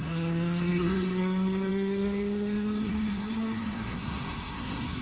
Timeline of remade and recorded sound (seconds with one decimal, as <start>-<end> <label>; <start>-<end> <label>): 0.0-5.0 remade